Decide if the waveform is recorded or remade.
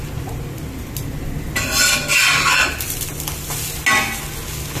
recorded